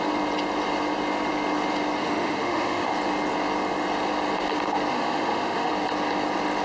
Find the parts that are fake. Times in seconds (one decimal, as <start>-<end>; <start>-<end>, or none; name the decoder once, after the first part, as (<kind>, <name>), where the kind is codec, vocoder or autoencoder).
2.0-2.9 (autoencoder, DAC-VAE); 4.9-5.7